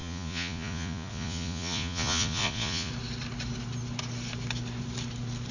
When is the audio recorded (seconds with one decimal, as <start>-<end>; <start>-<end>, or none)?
2.9-5.5